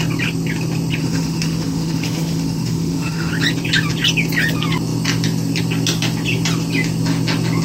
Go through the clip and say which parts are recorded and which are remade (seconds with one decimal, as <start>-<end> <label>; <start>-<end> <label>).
0.0-1.0 recorded; 1.0-3.3 remade; 3.3-7.6 recorded